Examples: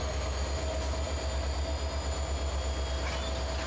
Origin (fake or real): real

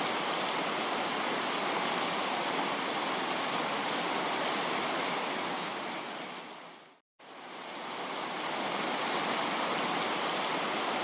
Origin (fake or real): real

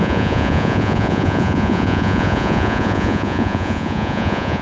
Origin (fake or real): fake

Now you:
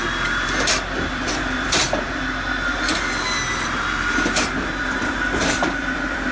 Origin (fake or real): fake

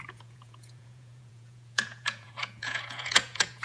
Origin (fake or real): fake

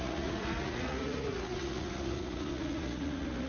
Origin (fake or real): fake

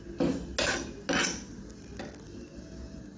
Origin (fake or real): real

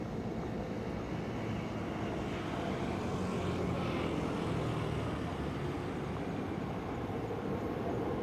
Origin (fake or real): real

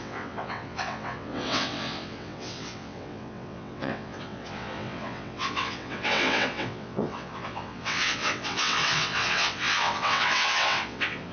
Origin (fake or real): fake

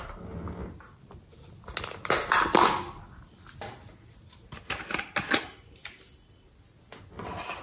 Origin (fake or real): real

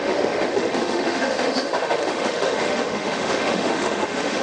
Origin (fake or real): fake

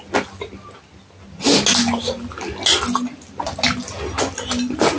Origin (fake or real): real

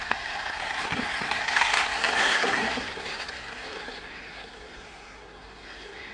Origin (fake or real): fake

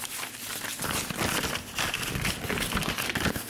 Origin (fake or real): real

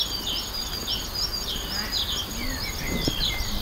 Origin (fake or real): real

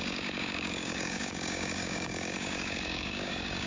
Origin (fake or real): fake